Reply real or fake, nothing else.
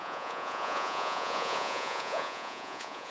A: fake